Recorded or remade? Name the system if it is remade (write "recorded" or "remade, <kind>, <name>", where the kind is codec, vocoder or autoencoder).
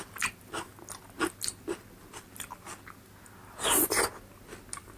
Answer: recorded